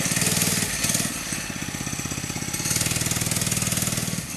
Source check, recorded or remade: recorded